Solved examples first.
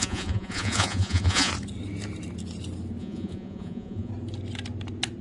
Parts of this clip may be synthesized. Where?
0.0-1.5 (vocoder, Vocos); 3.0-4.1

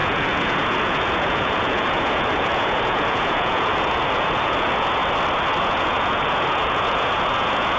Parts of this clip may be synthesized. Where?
0.0-5.0 (vocoder, Vocos); 5.6-7.8